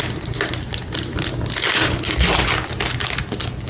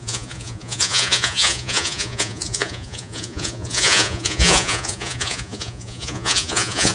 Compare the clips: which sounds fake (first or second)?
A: second